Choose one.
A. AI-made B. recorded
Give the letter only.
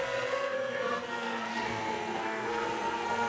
A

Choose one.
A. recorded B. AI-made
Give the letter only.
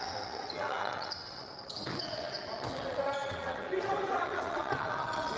B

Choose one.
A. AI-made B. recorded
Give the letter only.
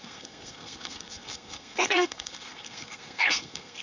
A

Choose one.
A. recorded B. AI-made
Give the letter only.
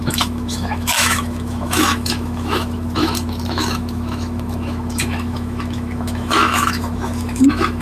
B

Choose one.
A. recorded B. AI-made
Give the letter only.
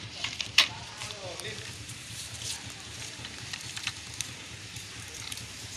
B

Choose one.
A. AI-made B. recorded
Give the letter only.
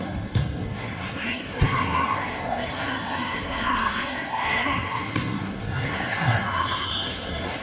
A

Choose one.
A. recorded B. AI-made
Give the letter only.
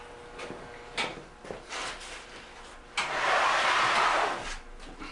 A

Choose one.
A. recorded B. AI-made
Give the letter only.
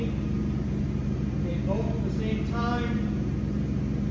A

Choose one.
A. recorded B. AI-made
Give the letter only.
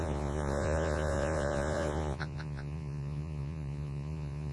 B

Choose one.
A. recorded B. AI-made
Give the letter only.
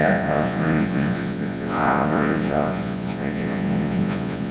B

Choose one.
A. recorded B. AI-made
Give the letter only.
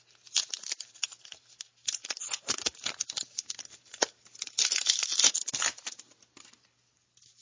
B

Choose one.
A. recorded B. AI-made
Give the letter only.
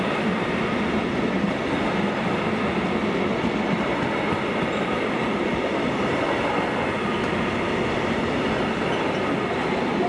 A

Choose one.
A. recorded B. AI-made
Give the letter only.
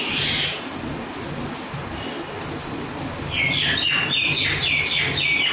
A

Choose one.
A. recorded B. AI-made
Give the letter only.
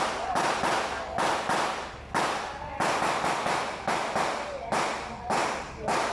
A